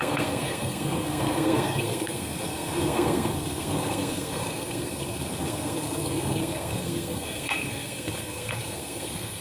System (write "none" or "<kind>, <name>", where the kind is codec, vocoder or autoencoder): codec, SNAC